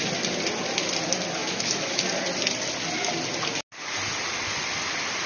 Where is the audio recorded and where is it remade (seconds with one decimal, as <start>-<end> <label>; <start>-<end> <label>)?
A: 0.0-1.4 recorded; 1.4-2.0 remade; 2.0-5.3 recorded